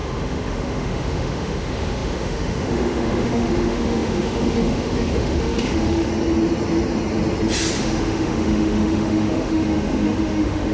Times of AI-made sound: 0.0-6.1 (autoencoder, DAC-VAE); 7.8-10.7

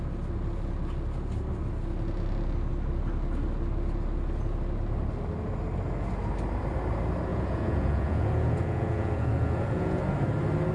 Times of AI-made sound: 7.3-10.0 (vocoder, Vocos)

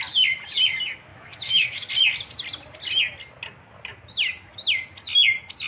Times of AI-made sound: 1.1-1.9 (autoencoder, DAC-VAE)

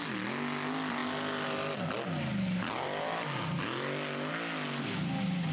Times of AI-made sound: none